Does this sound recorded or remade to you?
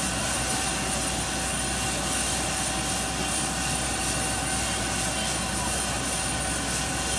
recorded